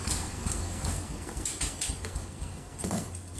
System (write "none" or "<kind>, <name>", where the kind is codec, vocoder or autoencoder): codec, SNAC